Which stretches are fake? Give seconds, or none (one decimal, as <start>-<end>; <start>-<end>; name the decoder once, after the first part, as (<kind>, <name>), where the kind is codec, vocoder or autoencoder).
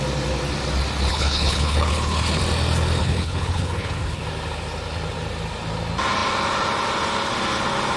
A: 1.1-2.4 (codec, HILCodec); 3.0-4.2